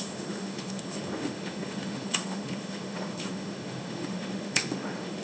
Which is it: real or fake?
fake